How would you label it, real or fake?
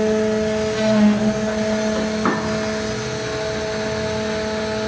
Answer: real